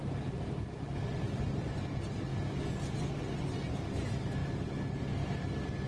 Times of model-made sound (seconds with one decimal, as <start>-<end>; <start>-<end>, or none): none